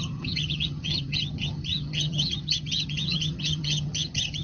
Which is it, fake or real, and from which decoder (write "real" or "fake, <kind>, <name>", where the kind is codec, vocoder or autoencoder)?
fake, vocoder, HiFi-GAN